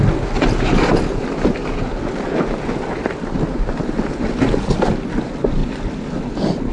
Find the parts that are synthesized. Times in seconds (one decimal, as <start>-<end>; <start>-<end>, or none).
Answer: none